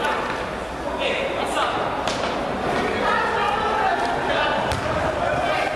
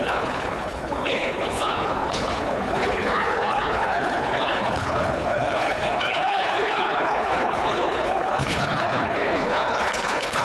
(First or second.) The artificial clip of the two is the second